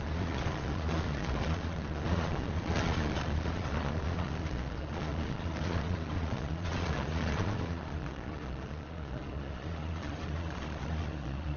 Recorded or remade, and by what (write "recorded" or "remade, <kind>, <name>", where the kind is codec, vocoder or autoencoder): remade, vocoder, Vocos